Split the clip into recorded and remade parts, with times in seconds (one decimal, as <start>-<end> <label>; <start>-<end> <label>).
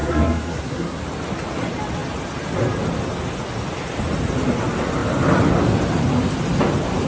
0.0-1.0 remade; 1.0-7.1 recorded